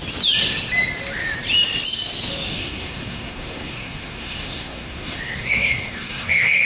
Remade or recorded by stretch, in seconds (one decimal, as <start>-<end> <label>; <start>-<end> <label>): 0.0-2.5 recorded; 2.5-6.7 remade